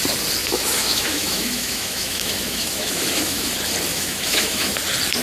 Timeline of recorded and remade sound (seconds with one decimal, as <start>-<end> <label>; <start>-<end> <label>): 0.0-0.4 recorded; 0.4-3.5 remade; 3.5-3.9 recorded; 3.9-4.7 remade; 4.7-5.2 recorded